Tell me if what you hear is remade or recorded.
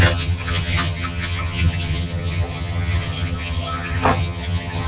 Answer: remade